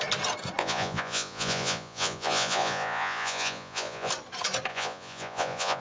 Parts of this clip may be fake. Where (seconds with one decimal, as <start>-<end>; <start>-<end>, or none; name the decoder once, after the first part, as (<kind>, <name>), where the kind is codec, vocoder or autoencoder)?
0.6-4.1 (vocoder, Vocos); 4.7-5.8